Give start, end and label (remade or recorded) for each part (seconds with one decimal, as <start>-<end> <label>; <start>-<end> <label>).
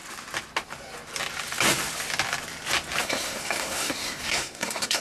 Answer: 0.0-3.0 recorded; 3.0-5.0 remade